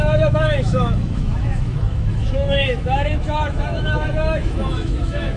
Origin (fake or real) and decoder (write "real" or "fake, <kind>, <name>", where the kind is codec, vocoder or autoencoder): fake, autoencoder, DAC-VAE